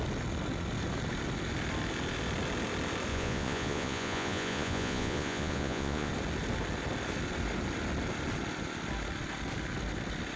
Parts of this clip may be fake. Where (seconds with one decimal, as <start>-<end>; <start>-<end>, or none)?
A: 3.1-6.1